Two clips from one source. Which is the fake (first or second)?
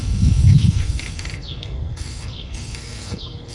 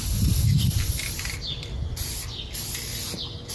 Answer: first